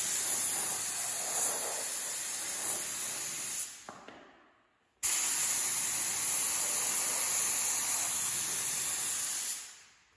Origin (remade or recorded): recorded